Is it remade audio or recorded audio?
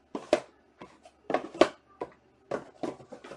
recorded